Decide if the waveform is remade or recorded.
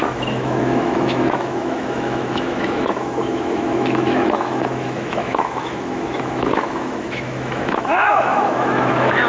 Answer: remade